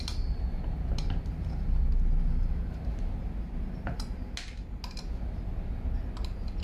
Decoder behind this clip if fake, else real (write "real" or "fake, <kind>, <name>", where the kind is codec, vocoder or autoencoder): real